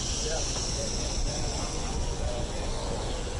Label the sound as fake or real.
fake